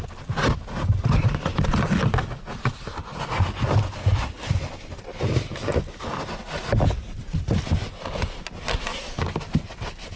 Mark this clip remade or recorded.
recorded